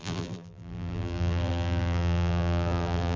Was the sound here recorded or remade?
remade